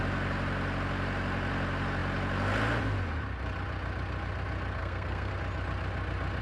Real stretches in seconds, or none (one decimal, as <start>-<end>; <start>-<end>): 0.0-4.8; 5.3-6.4